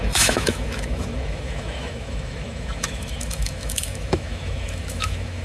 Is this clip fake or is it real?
fake